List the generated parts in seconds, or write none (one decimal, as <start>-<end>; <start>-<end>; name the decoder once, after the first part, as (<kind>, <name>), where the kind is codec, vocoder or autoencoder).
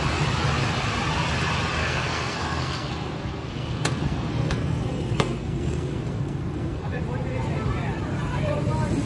1.8-7.0 (codec, SNAC)